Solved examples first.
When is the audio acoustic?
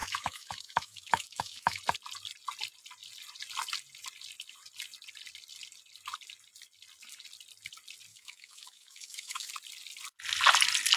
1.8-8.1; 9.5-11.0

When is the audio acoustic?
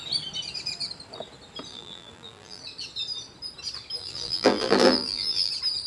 0.0-1.7; 2.6-4.0; 5.5-5.9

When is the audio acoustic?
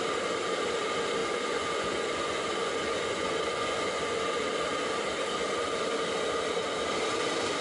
0.0-1.2; 4.2-7.6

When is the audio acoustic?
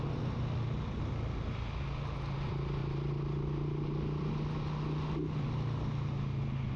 0.0-6.8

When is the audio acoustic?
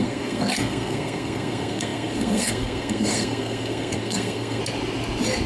4.6-5.5